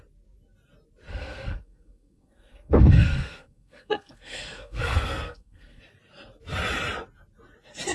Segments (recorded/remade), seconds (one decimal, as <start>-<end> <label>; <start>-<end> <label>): 0.0-1.1 recorded; 1.1-5.8 remade; 5.8-7.9 recorded